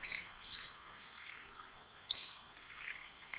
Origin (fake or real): fake